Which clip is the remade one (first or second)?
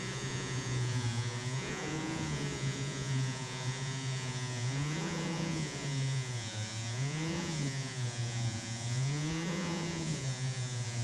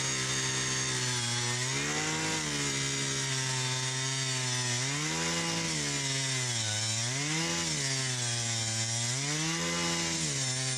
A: first